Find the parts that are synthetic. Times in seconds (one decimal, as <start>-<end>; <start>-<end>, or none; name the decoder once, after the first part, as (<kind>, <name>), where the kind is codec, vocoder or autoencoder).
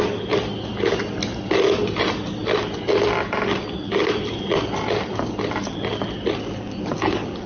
none